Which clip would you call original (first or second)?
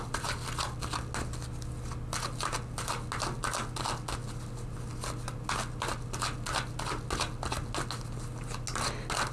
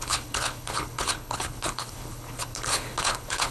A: first